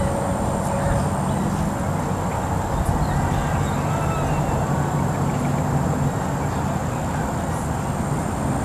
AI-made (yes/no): no